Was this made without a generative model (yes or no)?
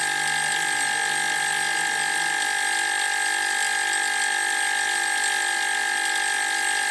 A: yes